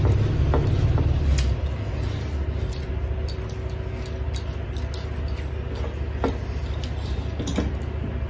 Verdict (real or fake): real